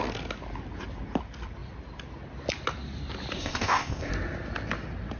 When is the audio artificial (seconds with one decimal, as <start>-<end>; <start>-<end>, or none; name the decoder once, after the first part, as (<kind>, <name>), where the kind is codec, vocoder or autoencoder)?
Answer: 3.4-4.1 (codec, ZipCodec)